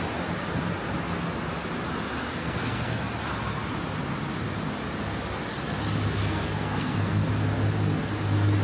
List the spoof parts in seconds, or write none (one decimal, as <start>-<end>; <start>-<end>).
2.4-3.0; 6.2-7.3